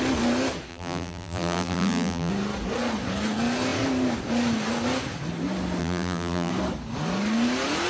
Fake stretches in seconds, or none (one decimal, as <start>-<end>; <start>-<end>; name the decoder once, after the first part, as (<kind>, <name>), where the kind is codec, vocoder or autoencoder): 0.7-2.3 (vocoder, BigVGAN v2); 5.8-6.5